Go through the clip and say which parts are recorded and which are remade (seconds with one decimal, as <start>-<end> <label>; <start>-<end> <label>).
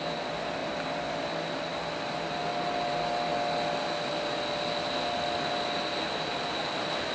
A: 0.0-7.1 recorded